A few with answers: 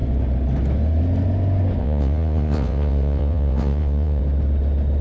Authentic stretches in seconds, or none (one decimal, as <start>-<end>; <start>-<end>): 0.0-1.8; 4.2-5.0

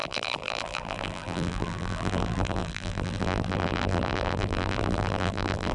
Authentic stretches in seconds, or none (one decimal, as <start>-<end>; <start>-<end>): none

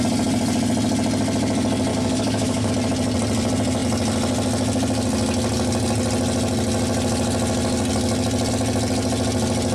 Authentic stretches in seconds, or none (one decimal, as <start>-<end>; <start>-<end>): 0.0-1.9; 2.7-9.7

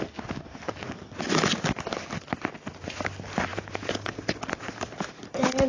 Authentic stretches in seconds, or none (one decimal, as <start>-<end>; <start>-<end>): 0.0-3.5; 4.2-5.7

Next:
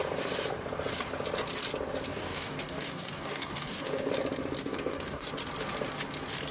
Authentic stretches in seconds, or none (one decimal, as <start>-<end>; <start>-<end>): 0.0-2.1; 4.1-4.6; 5.3-6.5